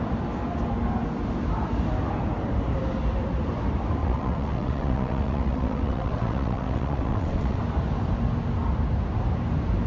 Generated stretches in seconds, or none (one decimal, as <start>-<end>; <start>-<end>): 4.0-7.6